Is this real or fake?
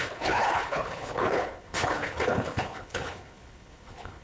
fake